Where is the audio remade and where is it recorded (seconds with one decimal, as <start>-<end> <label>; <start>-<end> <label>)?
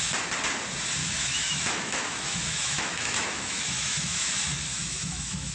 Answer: 0.0-1.0 recorded; 1.0-4.3 remade; 4.3-4.7 recorded; 4.7-5.5 remade